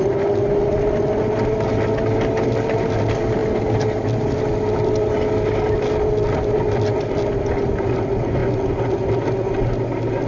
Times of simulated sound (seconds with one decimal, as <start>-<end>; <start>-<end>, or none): none